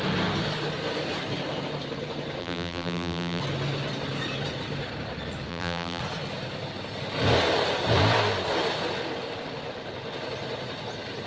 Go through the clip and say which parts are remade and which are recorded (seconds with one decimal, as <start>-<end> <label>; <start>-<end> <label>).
0.0-2.4 recorded; 2.4-3.4 remade; 3.4-5.5 recorded; 5.5-6.0 remade; 6.0-11.3 recorded